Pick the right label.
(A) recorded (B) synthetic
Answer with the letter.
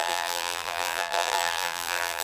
B